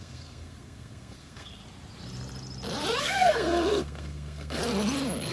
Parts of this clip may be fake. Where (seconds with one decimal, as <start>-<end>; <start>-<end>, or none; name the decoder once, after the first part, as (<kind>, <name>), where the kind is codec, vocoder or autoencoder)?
0.0-1.6 (codec, SNAC); 3.0-4.6